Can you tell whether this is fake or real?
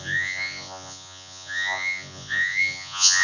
fake